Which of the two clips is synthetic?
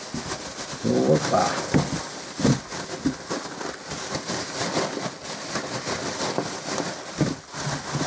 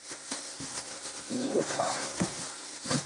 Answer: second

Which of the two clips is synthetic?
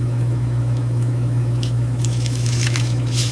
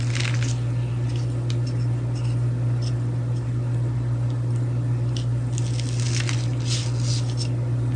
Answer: first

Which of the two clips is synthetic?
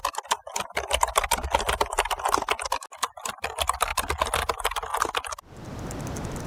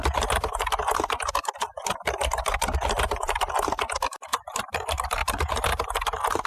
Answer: second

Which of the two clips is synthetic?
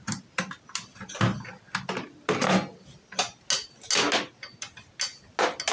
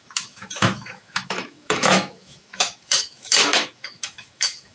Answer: second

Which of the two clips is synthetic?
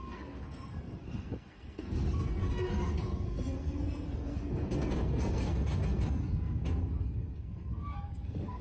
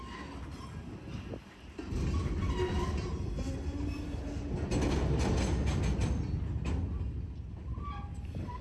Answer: first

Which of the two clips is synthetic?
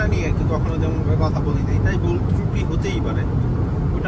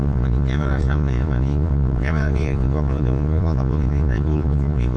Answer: second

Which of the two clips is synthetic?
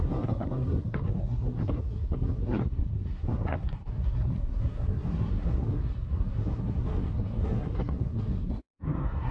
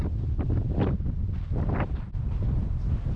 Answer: first